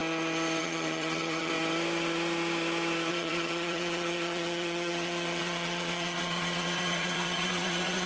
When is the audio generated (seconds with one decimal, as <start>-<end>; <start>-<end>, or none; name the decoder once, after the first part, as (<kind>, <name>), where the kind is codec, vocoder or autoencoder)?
0.6-1.5 (vocoder, HiFi-GAN); 3.1-8.1